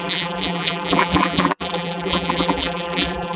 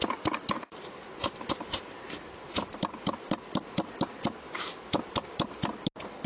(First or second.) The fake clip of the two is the first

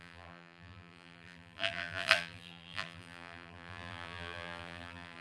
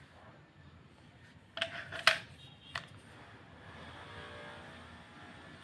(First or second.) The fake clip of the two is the first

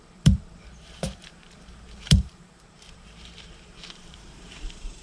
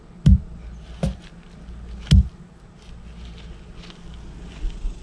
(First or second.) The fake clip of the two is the first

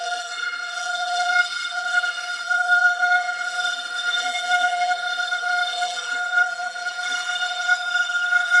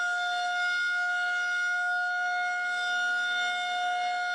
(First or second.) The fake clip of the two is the first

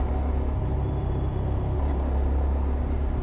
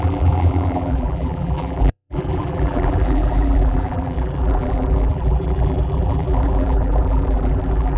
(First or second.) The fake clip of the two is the second